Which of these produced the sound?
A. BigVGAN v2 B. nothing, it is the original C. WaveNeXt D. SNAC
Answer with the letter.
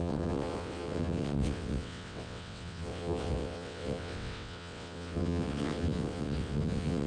C